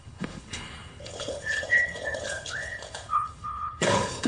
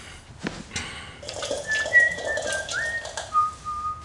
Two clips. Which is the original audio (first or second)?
second